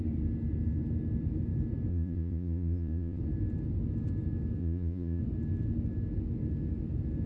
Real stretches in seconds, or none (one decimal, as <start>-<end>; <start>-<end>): 0.0-1.9; 3.2-4.6; 5.2-7.3